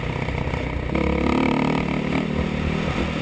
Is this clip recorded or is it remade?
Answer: recorded